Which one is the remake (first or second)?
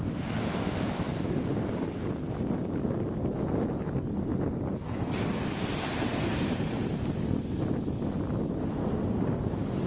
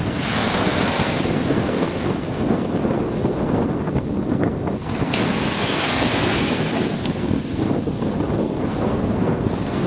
second